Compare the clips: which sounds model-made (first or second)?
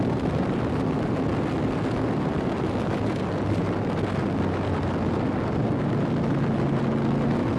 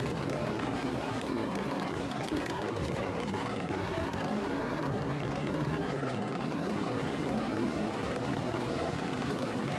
second